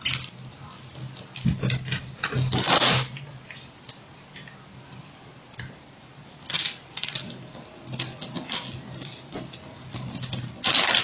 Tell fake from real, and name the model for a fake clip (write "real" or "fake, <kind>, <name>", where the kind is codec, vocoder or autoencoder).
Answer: real